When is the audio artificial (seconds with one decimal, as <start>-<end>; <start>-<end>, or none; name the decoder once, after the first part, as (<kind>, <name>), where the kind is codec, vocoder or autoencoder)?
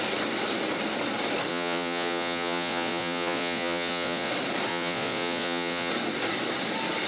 1.5-4.3 (vocoder, Vocos); 4.7-5.9